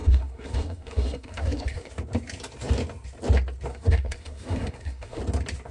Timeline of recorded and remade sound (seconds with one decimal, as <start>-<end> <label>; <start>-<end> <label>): 0.0-1.9 remade; 1.9-3.7 recorded; 3.7-5.2 remade; 5.2-5.7 recorded